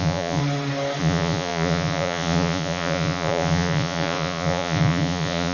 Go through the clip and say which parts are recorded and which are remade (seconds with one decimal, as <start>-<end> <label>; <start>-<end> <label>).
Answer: 0.0-0.4 remade; 0.4-1.0 recorded; 1.0-5.5 remade